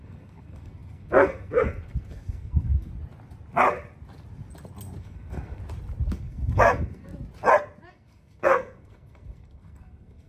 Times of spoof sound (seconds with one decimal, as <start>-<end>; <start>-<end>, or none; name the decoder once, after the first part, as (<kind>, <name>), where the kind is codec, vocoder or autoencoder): 0.0-2.9 (codec, SNAC); 5.0-5.6; 6.1-7.1; 7.9-10.3